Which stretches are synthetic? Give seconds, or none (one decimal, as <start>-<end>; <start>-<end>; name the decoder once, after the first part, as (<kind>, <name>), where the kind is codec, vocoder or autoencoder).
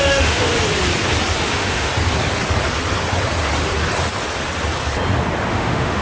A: 0.0-0.5 (autoencoder, DAC-VAE); 1.4-1.9; 5.5-6.0